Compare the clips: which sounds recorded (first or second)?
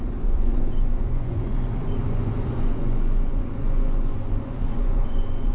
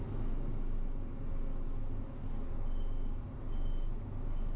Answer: second